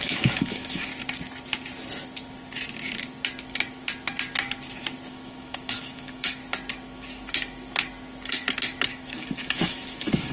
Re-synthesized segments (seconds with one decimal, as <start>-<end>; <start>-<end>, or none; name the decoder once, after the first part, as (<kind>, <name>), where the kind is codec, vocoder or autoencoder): 0.0-0.9 (autoencoder, DAC-VAE); 5.1-6.4; 8.9-10.3